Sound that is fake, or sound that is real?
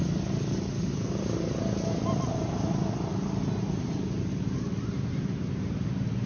real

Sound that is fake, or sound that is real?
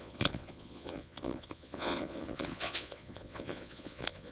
fake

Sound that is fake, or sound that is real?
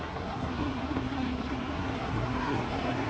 fake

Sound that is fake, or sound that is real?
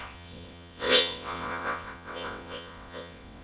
fake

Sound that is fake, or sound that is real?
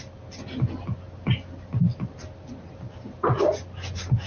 real